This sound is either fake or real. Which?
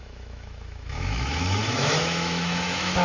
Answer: fake